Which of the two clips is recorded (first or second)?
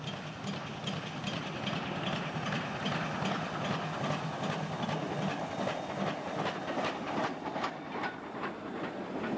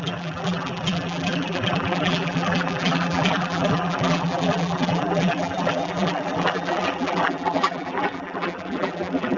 first